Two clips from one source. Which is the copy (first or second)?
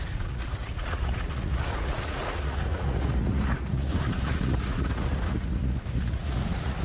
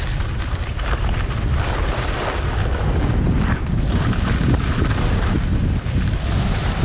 first